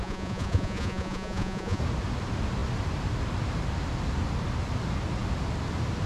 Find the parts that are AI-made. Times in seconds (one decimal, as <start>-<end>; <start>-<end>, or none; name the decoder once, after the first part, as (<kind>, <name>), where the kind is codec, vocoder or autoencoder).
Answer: 0.0-1.8 (vocoder, Vocos)